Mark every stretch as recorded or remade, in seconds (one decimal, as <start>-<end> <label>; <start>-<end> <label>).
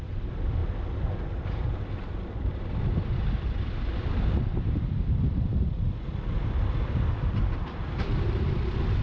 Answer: 0.0-0.6 remade; 0.6-2.3 recorded; 2.3-9.0 remade